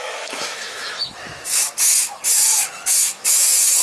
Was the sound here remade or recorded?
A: remade